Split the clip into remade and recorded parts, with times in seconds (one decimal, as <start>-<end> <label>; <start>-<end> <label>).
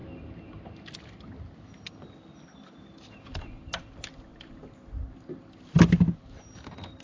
0.0-7.0 recorded